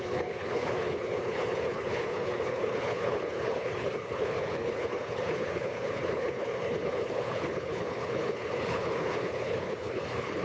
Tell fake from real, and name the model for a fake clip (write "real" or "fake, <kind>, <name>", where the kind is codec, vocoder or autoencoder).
fake, codec, HILCodec